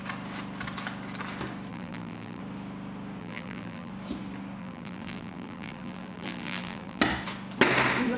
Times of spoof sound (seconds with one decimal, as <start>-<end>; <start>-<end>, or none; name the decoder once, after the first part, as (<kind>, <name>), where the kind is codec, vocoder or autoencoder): 1.7-2.4 (vocoder, BigVGAN v2); 3.2-3.9; 4.6-7.0